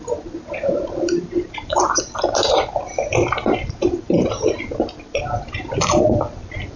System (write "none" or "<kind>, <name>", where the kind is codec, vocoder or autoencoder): vocoder, BigVGAN v2